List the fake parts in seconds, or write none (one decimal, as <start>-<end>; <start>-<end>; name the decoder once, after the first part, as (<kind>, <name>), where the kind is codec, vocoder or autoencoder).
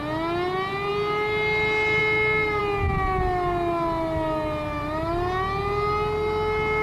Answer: none